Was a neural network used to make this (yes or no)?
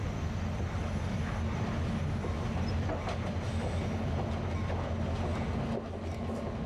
no